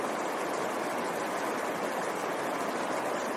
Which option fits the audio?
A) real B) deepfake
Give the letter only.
A